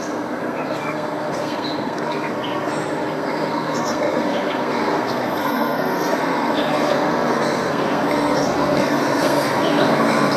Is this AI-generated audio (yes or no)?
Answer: yes